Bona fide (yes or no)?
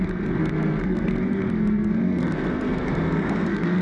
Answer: no